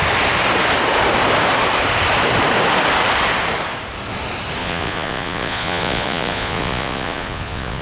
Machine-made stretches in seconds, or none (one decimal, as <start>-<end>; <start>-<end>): 4.6-7.8